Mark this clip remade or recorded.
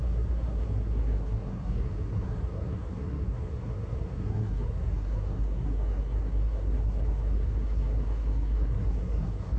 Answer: remade